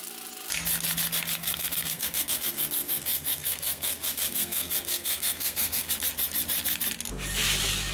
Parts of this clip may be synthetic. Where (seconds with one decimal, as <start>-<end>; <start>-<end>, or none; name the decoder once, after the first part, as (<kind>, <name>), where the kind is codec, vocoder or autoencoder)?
1.4-5.9 (codec, SNAC)